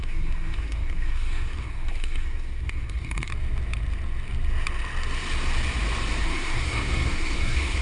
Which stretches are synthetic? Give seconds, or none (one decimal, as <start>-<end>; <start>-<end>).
0.0-3.3; 6.2-7.8